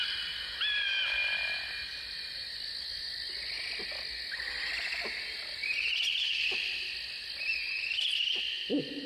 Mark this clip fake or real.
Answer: real